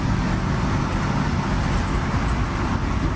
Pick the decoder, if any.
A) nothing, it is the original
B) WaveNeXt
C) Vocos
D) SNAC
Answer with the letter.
A